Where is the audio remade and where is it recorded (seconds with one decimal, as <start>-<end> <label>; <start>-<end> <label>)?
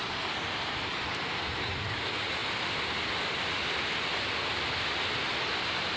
0.0-6.0 recorded